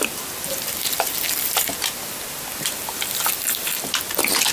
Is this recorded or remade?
recorded